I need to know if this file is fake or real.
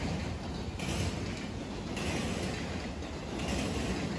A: real